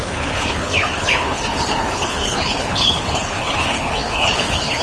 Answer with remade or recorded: remade